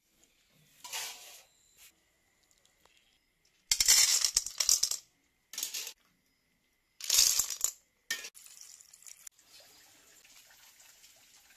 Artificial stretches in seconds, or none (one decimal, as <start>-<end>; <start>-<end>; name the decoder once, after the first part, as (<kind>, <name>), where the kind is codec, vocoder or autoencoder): none